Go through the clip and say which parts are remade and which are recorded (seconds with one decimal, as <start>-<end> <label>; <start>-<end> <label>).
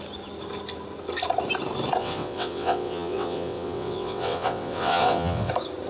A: 0.0-2.0 recorded; 2.0-5.5 remade; 5.5-5.9 recorded